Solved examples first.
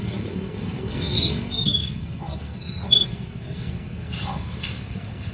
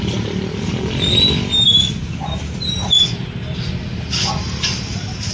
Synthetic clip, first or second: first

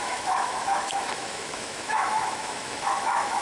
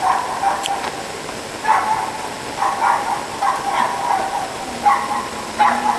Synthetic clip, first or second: first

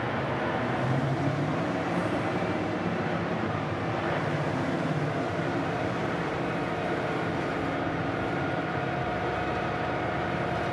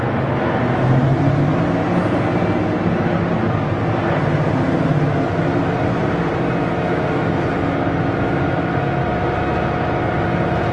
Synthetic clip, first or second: first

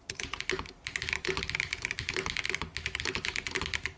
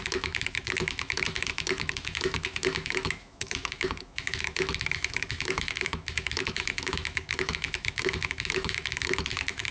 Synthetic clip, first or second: second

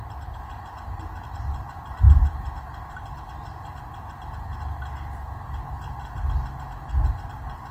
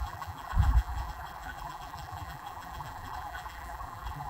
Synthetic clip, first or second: second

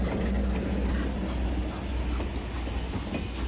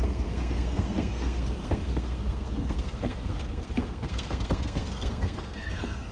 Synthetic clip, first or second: second